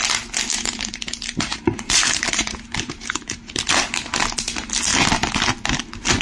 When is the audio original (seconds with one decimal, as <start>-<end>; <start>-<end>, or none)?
0.0-0.5; 3.5-6.2